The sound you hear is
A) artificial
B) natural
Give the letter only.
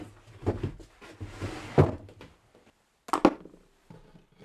B